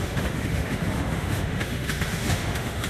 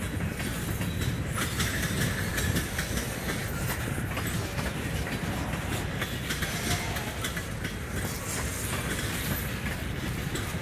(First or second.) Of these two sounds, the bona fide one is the second